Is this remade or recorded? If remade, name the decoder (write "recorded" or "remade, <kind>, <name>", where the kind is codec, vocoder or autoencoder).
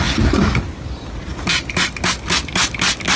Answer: recorded